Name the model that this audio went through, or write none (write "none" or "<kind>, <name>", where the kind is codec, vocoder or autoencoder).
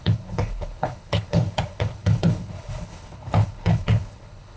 codec, HILCodec